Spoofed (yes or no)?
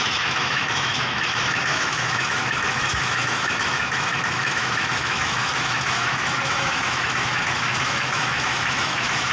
yes